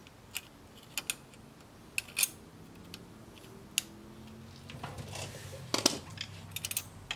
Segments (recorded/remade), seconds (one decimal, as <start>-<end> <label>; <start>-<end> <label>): 0.0-7.2 recorded

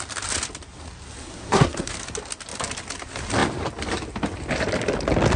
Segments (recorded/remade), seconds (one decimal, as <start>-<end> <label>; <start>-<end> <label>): 0.0-1.2 recorded; 1.2-1.9 remade; 1.9-5.4 recorded

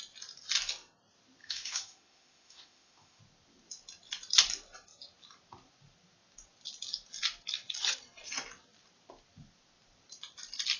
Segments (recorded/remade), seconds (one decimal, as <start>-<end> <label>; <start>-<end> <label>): 0.0-1.4 recorded; 1.4-3.2 remade; 3.2-10.8 recorded

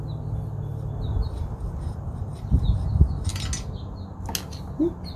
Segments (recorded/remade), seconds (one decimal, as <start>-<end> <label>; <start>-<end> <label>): 0.0-0.5 recorded; 0.5-2.6 remade; 2.6-5.2 recorded

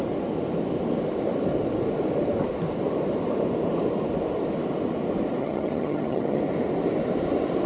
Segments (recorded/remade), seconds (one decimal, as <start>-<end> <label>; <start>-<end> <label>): 0.0-5.4 recorded; 5.4-6.4 remade; 6.4-7.7 recorded

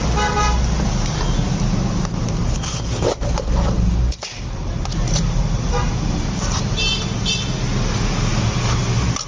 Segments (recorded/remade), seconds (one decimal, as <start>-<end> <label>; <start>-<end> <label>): 0.0-2.4 recorded; 2.4-6.6 remade; 6.6-9.3 recorded

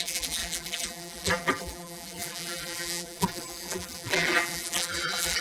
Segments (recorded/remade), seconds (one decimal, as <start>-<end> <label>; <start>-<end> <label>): 0.0-5.4 remade

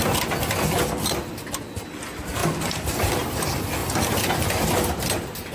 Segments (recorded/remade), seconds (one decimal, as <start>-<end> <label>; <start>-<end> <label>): 0.0-5.5 recorded